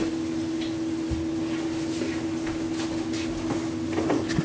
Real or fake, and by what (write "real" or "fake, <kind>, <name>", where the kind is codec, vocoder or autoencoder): real